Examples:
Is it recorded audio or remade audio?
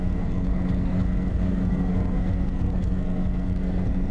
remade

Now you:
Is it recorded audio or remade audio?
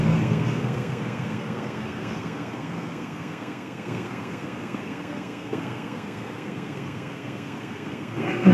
remade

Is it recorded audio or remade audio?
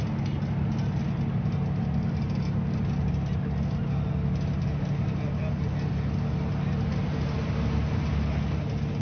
recorded